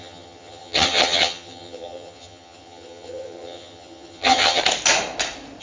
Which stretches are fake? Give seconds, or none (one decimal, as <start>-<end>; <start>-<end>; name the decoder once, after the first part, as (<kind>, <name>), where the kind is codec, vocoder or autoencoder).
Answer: 0.0-4.6 (vocoder, HiFi-GAN)

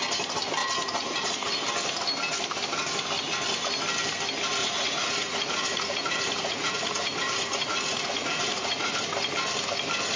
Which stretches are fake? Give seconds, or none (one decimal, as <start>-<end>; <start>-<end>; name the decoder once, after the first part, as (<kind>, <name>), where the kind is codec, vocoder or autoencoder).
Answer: 0.6-1.3 (vocoder, Vocos); 4.6-9.0